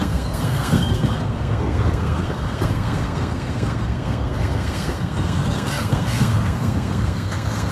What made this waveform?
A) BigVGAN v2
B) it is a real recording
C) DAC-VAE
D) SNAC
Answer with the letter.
D